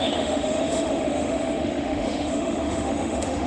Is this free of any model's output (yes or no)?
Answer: no